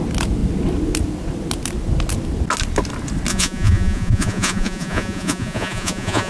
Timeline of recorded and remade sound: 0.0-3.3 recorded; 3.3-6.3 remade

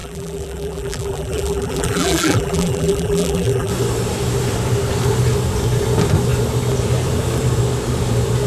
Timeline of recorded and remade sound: 0.0-3.7 remade; 3.7-8.5 recorded

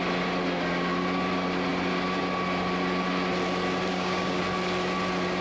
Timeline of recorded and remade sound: 0.0-3.9 recorded; 3.9-4.4 remade; 4.4-5.4 recorded

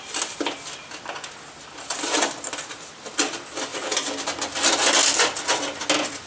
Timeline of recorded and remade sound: 0.0-6.3 recorded

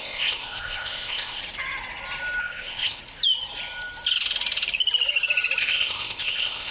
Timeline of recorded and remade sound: 0.0-1.4 remade; 1.4-2.4 recorded; 2.4-3.0 remade; 3.0-5.6 recorded; 5.6-6.7 remade

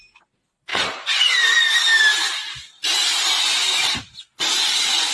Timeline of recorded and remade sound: 0.0-5.1 recorded

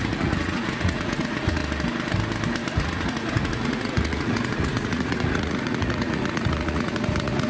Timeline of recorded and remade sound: 0.0-1.6 remade; 1.6-2.8 recorded; 2.8-7.5 remade